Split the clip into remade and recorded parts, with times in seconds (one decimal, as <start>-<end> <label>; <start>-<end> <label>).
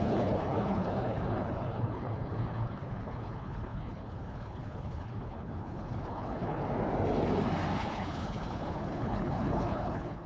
0.0-6.6 remade; 6.6-7.8 recorded; 7.8-10.3 remade